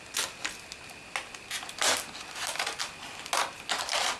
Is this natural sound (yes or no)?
yes